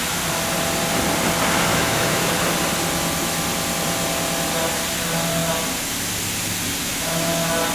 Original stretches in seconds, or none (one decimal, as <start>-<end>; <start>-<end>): 0.0-1.7; 2.3-6.8; 7.3-7.7